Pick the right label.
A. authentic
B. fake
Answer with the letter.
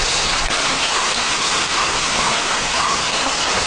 B